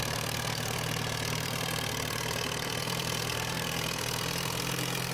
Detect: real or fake fake